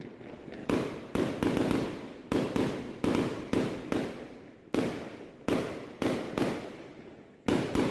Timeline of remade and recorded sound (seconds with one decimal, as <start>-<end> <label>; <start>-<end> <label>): 0.0-7.9 recorded